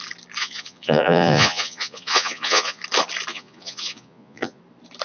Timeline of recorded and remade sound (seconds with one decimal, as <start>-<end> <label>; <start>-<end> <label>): 0.0-0.4 recorded; 0.4-2.8 remade; 2.8-3.3 recorded; 3.3-4.6 remade; 4.6-5.0 recorded